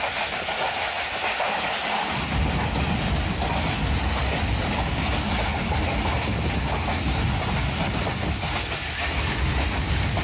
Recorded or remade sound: recorded